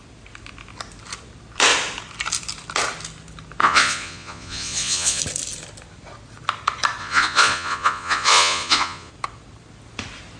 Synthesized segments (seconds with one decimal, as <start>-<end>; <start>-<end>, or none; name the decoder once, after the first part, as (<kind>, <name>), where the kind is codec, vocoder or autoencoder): 3.6-5.2 (vocoder, Vocos); 7.0-9.1